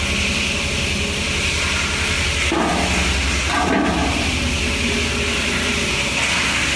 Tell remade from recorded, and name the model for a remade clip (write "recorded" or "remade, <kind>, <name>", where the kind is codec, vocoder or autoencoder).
recorded